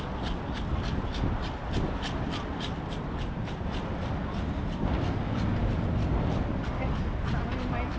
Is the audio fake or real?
real